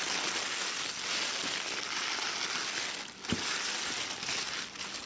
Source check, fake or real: real